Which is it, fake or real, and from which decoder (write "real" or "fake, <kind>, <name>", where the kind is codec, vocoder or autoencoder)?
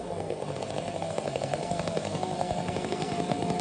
fake, codec, SNAC